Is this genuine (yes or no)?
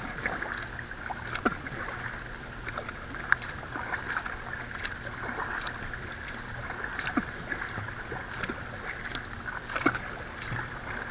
yes